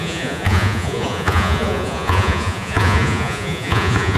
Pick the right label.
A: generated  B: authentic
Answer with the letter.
A